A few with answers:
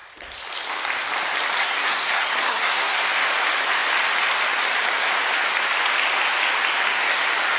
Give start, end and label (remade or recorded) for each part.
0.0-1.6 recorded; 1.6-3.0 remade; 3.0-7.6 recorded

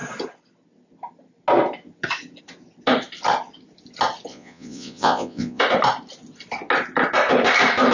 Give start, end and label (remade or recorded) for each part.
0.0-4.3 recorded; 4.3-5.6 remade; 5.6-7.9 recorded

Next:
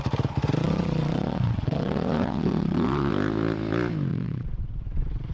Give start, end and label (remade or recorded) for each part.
0.0-0.6 recorded; 0.6-3.1 remade; 3.1-4.1 recorded; 4.1-5.3 remade

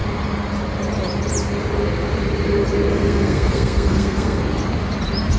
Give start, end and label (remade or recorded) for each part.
0.0-2.9 recorded; 2.9-4.4 remade; 4.4-5.4 recorded

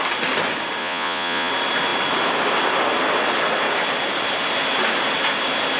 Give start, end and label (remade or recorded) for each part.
0.0-0.8 recorded; 0.8-1.5 remade; 1.5-5.8 recorded

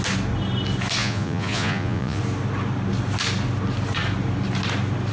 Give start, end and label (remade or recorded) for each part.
0.0-1.0 recorded; 1.0-2.2 remade; 2.2-5.1 recorded

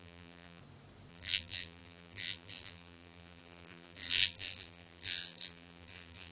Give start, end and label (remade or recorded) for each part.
0.0-0.6 remade; 0.6-1.1 recorded; 1.1-6.3 remade